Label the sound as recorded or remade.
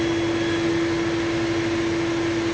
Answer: recorded